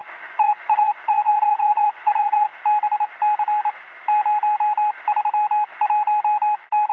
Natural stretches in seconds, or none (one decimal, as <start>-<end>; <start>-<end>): 2.5-6.9